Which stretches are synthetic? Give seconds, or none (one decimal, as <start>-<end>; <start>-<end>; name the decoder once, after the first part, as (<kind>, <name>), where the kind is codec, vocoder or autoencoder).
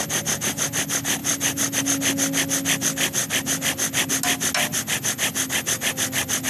1.2-1.8 (vocoder, BigVGAN v2)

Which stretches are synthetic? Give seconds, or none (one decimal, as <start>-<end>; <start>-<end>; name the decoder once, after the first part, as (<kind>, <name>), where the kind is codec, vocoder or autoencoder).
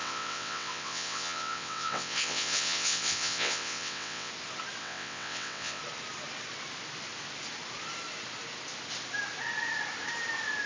0.0-4.3 (vocoder, WaveNeXt); 4.8-5.8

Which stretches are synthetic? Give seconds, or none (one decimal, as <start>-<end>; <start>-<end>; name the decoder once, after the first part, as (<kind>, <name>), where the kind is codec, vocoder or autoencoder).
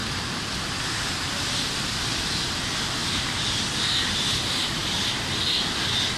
0.0-3.7 (vocoder, BigVGAN v2); 4.8-5.4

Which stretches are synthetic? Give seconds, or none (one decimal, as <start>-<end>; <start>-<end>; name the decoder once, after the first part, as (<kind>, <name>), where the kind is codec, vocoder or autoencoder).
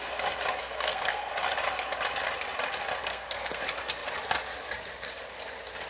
0.6-1.3 (codec, SNAC); 3.0-3.6